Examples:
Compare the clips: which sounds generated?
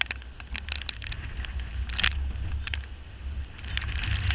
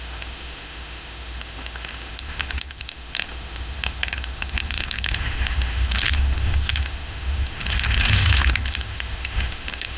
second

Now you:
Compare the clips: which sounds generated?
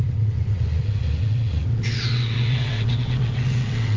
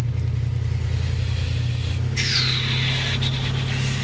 first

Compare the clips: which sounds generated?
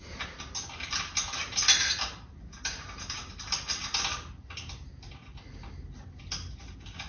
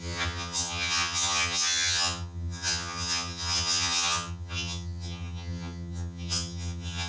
second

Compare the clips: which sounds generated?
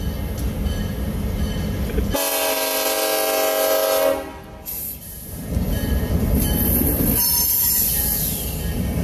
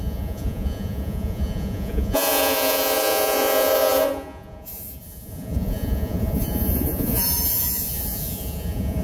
second